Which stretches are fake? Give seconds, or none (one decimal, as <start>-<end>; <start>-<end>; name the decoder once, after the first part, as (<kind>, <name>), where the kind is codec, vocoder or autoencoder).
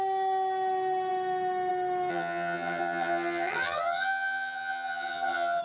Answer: 2.1-5.6 (vocoder, HiFi-GAN)